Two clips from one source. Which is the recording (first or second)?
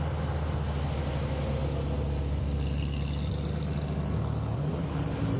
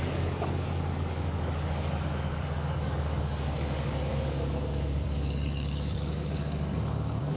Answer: first